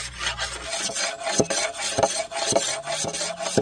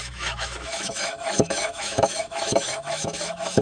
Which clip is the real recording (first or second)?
first